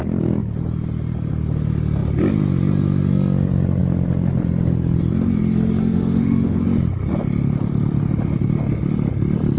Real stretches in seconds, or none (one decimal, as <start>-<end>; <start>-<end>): 0.0-5.8; 6.6-9.6